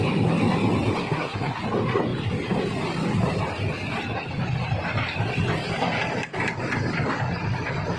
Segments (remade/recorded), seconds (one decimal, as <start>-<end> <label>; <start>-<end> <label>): 0.0-1.0 recorded; 1.0-1.6 remade; 1.6-8.0 recorded